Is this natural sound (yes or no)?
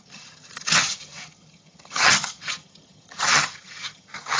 no